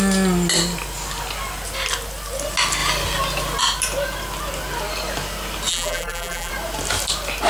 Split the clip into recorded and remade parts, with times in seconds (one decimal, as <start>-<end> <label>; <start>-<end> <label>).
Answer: 0.0-5.7 recorded; 5.7-6.5 remade; 6.5-7.5 recorded